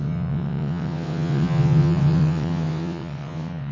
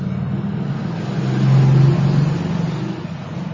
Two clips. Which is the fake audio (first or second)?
first